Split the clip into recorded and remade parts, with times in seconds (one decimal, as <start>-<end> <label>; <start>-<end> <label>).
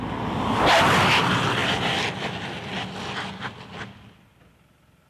0.0-5.1 recorded